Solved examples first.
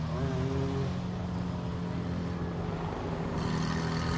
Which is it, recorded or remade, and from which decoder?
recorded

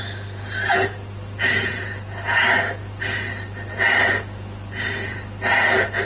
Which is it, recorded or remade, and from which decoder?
recorded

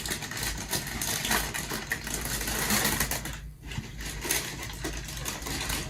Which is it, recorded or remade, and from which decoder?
recorded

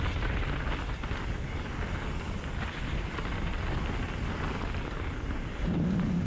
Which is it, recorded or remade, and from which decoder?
recorded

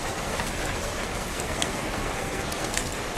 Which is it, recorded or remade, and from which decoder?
remade, codec, SNAC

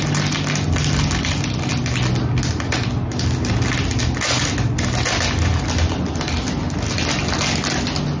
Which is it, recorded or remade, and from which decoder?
recorded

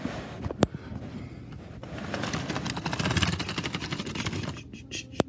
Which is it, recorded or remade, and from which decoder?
recorded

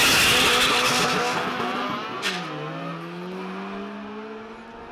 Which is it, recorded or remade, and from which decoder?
recorded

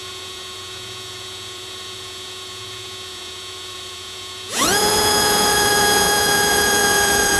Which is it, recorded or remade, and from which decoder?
remade, vocoder, Vocos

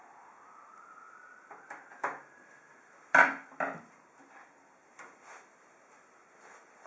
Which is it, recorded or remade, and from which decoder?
recorded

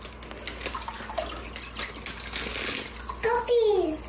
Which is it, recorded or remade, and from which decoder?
recorded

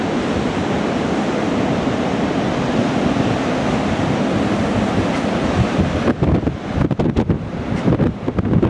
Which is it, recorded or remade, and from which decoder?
recorded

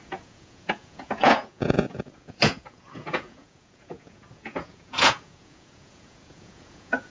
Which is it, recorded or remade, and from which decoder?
remade, vocoder, Vocos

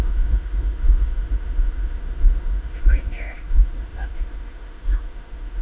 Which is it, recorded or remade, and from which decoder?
remade, autoencoder, DAC-VAE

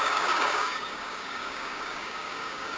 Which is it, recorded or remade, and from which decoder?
remade, codec, DAC